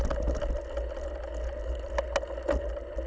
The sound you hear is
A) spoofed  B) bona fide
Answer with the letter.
B